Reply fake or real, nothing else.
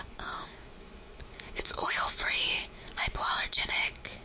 fake